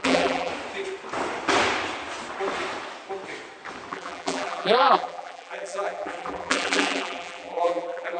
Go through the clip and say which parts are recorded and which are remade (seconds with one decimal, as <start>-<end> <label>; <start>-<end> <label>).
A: 0.0-0.5 remade; 0.5-3.9 recorded; 3.9-8.2 remade